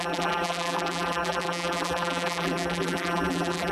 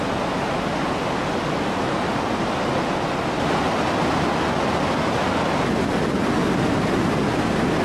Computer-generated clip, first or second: first